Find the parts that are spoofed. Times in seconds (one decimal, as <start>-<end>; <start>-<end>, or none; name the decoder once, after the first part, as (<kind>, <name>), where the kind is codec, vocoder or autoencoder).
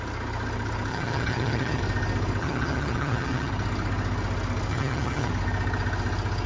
0.9-1.8 (vocoder, HiFi-GAN); 2.4-3.5; 4.7-5.3